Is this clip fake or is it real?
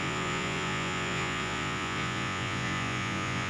fake